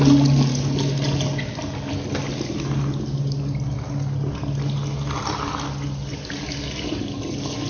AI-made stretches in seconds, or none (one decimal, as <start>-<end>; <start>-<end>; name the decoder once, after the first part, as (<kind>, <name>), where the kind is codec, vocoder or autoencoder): none